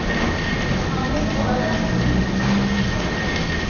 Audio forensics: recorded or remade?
recorded